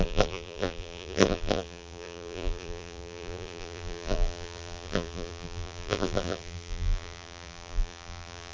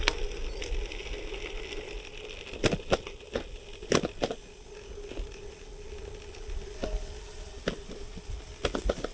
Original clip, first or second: second